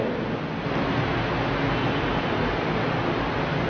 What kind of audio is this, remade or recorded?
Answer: recorded